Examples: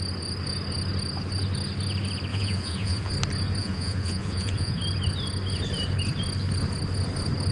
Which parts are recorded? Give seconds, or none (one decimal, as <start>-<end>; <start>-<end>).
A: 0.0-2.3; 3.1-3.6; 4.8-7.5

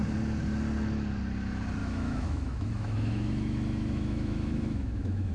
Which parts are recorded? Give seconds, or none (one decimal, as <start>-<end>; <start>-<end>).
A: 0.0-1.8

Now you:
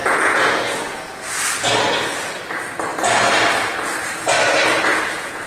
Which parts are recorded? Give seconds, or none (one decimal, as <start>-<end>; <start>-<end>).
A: 1.1-4.9

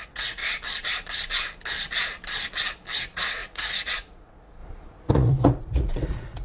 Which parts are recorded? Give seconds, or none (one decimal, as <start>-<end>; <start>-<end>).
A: 0.4-3.0

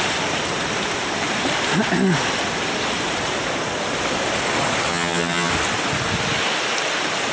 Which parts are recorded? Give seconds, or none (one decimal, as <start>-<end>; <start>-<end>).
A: 0.0-4.9; 5.5-7.3

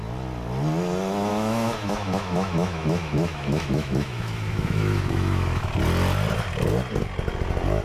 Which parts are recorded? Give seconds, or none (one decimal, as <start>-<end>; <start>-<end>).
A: 0.0-1.3; 5.7-7.8

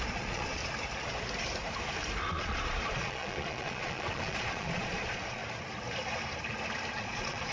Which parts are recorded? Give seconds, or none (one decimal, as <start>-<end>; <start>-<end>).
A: 0.6-2.3; 5.4-6.9